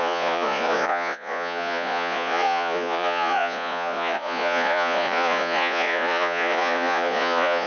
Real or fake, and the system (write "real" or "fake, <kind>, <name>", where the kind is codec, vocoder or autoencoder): fake, vocoder, Vocos